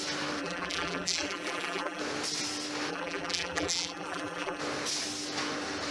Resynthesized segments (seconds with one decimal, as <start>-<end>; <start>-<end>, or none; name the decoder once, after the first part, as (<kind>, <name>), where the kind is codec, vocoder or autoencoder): 0.4-2.0 (vocoder, BigVGAN v2); 2.9-4.6